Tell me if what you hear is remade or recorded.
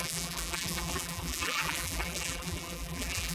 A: remade